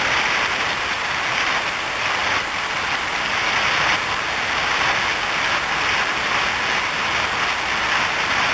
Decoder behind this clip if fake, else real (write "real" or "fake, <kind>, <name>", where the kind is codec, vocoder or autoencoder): real